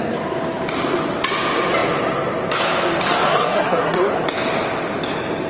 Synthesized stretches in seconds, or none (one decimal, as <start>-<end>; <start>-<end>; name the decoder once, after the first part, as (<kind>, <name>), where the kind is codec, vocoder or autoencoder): 3.3-4.1 (codec, SNAC)